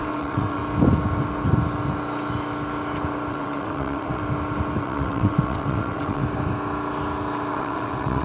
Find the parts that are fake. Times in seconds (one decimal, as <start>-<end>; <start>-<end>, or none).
0.0-0.6; 3.3-4.2; 4.8-6.2; 7.5-8.2

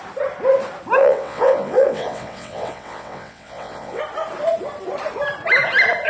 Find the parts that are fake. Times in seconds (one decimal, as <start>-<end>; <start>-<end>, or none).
1.0-4.0

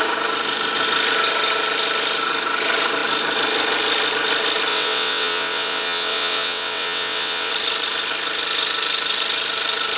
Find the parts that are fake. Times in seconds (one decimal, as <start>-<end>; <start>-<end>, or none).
4.7-7.5

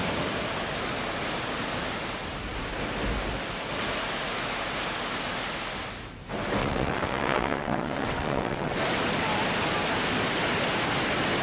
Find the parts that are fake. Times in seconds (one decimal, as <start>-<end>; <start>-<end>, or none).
6.6-8.8

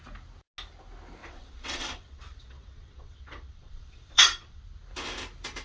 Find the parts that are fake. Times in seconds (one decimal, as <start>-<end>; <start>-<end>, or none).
1.2-4.6